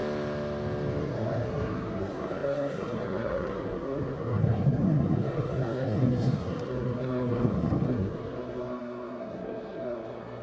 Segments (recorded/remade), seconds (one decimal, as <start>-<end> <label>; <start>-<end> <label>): 0.0-1.0 recorded; 1.0-10.4 remade